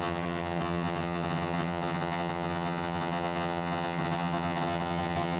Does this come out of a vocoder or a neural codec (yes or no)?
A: yes